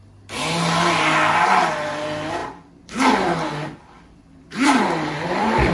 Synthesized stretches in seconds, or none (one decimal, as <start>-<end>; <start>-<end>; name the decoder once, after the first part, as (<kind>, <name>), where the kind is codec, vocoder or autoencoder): 2.4-5.7 (vocoder, BigVGAN v2)